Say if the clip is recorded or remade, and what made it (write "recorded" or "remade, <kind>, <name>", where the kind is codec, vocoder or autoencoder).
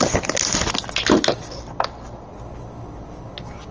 recorded